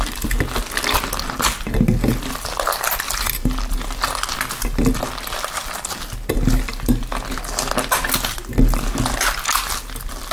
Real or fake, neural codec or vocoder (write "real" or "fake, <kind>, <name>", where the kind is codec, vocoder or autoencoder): real